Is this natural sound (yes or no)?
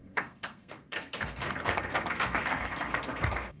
no